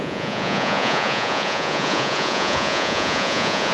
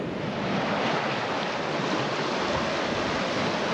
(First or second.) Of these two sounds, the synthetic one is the first